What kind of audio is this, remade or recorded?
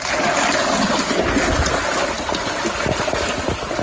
recorded